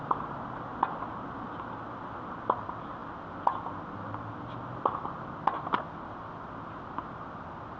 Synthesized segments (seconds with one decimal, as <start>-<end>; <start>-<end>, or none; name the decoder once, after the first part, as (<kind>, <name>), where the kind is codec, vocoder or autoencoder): none